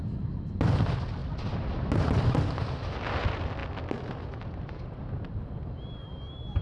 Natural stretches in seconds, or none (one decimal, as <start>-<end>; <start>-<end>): 0.0-6.6